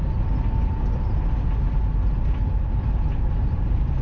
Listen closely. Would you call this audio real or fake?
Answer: real